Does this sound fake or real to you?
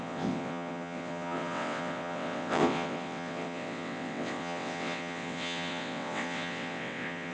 fake